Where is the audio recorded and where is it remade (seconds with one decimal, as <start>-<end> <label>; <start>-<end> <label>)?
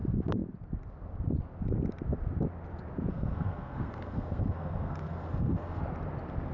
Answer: 0.0-3.1 recorded; 3.1-5.8 remade; 5.8-6.5 recorded